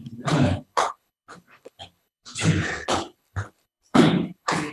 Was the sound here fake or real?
fake